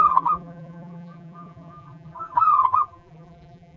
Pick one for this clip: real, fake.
fake